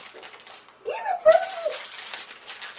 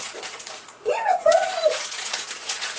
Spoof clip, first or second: second